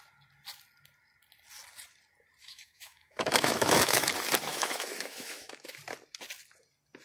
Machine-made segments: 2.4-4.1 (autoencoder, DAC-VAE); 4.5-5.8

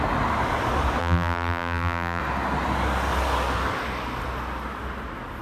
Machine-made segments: 1.0-2.2 (vocoder, BigVGAN v2)

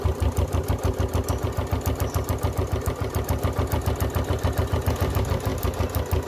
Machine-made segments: none

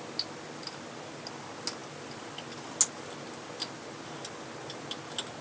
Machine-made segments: none

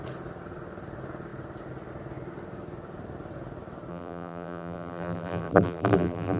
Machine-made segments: 3.9-6.4 (vocoder, BigVGAN v2)

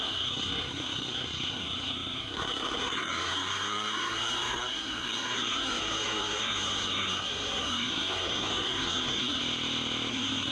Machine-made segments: 0.0-9.4 (codec, SNAC); 10.1-10.5